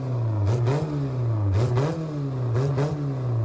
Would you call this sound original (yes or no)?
yes